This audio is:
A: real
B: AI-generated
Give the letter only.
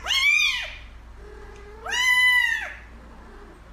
A